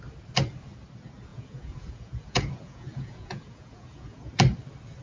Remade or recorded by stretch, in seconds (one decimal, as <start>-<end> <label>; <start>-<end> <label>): 0.0-1.3 recorded; 1.3-4.3 remade; 4.3-5.0 recorded